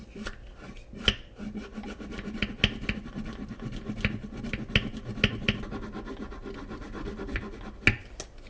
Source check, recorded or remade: recorded